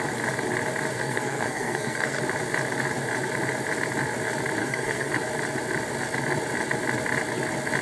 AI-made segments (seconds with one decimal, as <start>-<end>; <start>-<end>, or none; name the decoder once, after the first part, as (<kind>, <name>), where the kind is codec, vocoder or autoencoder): 0.9-2.2 (codec, SNAC); 4.6-5.1